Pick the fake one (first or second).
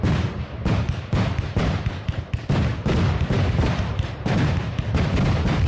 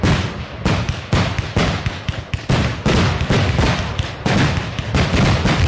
first